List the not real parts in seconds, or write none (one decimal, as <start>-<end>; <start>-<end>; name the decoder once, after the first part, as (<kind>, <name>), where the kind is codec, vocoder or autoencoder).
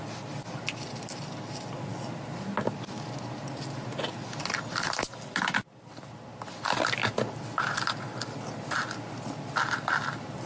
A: none